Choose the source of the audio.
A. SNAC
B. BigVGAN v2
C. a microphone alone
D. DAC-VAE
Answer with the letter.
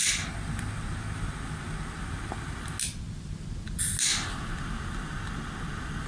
C